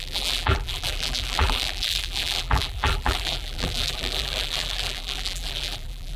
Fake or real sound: fake